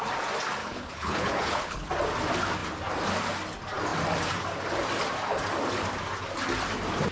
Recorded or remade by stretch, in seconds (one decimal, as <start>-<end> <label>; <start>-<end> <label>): 0.0-0.6 recorded; 0.6-1.9 remade; 1.9-7.1 recorded